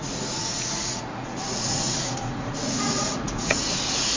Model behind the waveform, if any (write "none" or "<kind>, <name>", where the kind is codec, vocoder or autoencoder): vocoder, Vocos